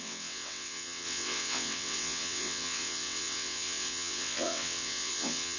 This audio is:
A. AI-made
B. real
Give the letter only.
A